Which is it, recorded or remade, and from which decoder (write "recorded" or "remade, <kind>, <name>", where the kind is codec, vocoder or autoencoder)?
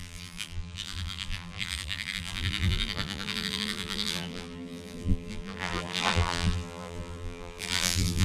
remade, vocoder, BigVGAN v2